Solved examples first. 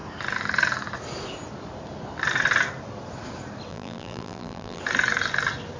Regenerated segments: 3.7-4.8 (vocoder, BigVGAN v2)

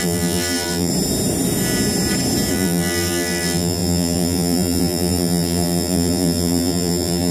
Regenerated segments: 0.0-0.9 (vocoder, BigVGAN v2); 2.5-7.3

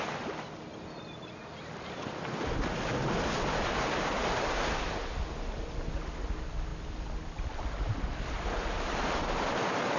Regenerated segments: none

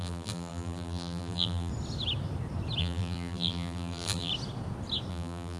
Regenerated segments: 0.0-1.7 (vocoder, BigVGAN v2); 2.8-4.3; 5.1-5.6

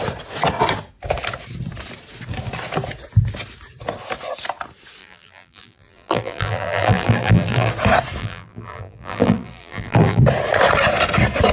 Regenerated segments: 5.0-7.7 (vocoder, BigVGAN v2); 8.2-10.2

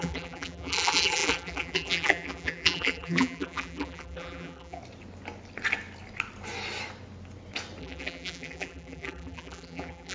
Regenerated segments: 0.0-4.8 (vocoder, BigVGAN v2); 7.8-10.1

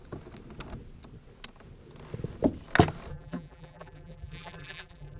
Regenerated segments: 3.1-5.2 (vocoder, BigVGAN v2)